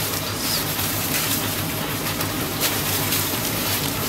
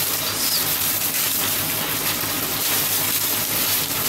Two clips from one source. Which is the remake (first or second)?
first